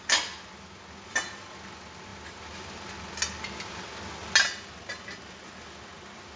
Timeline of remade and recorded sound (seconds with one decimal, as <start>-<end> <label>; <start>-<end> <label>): 0.0-6.4 recorded